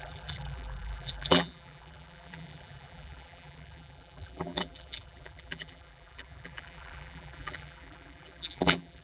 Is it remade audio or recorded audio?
remade